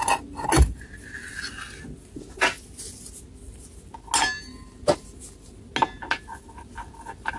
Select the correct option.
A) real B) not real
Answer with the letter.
A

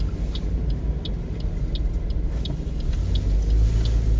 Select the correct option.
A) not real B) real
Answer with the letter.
B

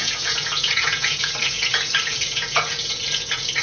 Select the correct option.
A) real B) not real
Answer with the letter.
B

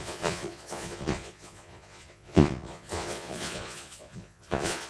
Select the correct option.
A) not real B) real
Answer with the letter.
A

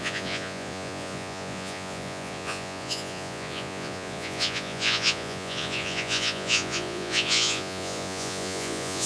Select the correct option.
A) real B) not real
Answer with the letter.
B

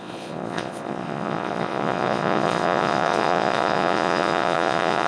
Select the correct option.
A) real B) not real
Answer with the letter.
B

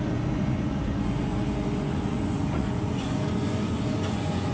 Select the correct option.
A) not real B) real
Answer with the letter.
A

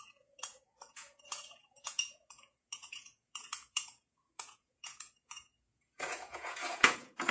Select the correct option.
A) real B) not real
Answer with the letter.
B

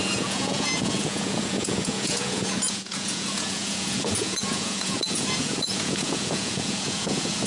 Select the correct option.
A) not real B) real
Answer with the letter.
A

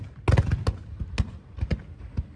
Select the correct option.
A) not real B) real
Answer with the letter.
B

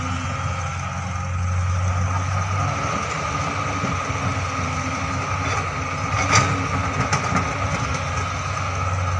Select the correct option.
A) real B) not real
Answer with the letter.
A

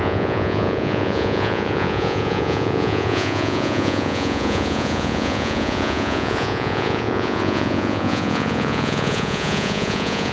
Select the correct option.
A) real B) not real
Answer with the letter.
B